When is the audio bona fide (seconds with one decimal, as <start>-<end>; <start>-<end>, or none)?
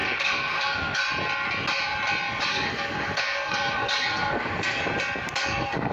1.0-2.5; 4.8-5.4